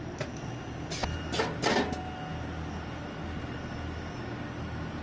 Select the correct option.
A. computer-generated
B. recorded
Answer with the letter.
B